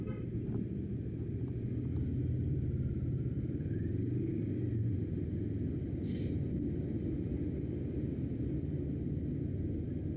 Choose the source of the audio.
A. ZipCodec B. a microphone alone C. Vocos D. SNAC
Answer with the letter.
B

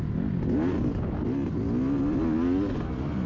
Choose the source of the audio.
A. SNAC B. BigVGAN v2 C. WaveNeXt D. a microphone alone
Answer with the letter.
D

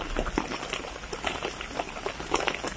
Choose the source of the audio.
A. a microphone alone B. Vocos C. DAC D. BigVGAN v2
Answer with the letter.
A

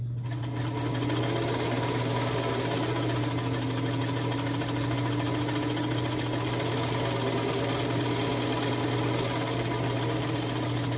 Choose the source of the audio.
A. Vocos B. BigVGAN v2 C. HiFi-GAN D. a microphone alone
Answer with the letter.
D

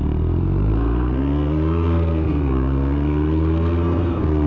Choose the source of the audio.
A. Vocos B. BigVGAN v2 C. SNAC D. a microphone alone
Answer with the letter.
C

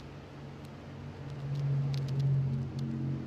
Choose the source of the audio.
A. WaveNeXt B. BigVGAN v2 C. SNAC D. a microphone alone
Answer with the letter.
D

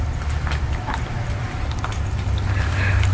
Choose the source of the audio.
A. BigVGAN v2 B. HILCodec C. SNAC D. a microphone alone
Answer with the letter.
A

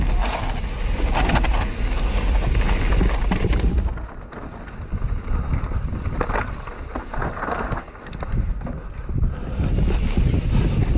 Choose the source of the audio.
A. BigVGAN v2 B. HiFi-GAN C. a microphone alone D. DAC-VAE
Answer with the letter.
C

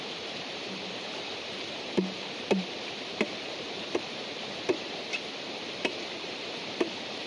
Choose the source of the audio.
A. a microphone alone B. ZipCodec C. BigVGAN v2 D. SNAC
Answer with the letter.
C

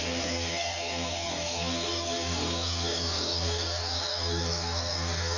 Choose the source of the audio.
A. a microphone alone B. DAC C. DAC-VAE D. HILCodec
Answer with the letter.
B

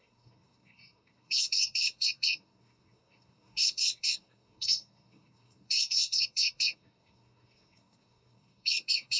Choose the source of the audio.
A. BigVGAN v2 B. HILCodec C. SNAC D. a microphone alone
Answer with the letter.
C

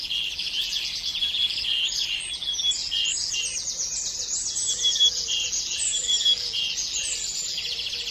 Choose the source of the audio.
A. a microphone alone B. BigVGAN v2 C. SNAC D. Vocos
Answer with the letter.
B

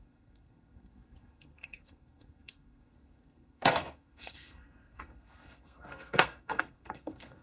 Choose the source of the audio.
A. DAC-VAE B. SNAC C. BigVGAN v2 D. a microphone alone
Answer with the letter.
B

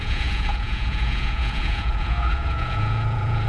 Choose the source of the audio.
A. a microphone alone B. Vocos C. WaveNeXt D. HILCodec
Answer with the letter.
B